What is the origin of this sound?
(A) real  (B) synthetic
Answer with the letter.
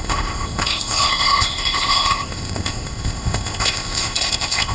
B